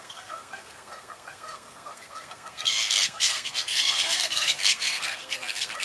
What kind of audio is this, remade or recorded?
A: remade